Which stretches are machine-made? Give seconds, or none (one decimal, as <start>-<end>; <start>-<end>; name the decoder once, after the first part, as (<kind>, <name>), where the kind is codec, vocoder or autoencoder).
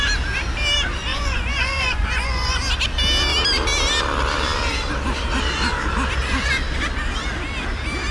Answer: 1.1-2.6 (vocoder, Vocos)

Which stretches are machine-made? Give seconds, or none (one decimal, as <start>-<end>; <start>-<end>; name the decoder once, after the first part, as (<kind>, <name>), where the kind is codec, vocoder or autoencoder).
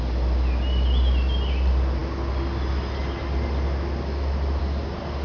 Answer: none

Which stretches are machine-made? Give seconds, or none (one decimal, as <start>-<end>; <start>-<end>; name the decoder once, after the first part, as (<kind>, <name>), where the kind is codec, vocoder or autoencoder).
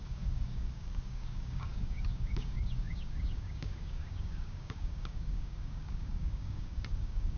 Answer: 0.0-7.4 (codec, DAC)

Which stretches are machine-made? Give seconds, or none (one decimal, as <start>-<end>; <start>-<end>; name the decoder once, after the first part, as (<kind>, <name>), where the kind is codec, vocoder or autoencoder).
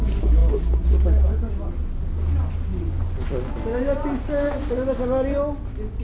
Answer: none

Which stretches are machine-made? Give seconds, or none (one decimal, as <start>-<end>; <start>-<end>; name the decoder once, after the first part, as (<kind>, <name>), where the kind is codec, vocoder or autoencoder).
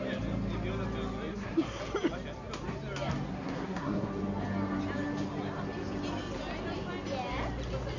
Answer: 1.3-1.8 (codec, SNAC); 3.3-4.1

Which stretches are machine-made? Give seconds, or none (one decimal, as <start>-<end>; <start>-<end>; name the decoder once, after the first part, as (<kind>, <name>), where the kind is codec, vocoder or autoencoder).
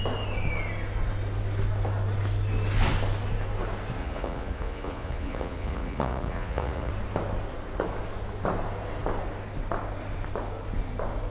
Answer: 4.0-6.9 (vocoder, Vocos)